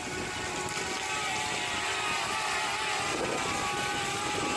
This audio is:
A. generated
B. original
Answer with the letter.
B